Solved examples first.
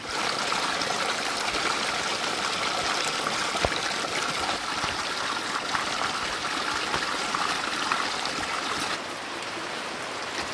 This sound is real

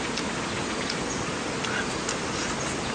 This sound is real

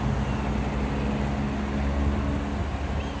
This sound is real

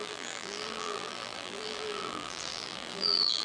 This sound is fake